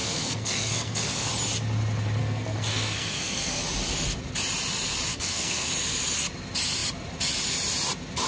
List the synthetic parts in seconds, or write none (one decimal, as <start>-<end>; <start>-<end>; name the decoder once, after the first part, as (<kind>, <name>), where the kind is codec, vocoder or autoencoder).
0.0-1.3 (codec, SNAC); 2.2-3.6; 5.1-5.7